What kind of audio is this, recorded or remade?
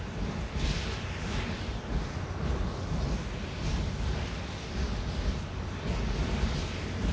recorded